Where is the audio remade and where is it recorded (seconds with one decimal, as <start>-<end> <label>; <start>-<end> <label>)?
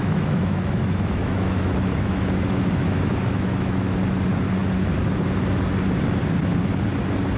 0.0-4.0 remade; 4.0-7.4 recorded